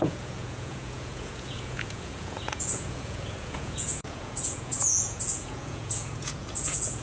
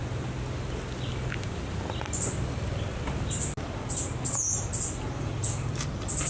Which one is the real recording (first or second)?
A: second